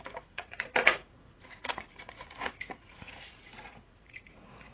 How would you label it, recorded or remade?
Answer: remade